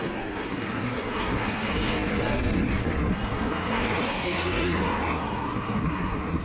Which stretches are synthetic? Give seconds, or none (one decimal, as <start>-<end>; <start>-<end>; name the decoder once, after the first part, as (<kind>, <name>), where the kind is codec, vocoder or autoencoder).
0.0-6.4 (codec, SNAC)